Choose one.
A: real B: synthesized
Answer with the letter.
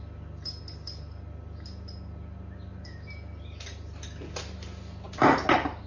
A